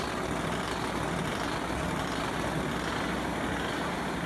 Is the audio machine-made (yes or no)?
no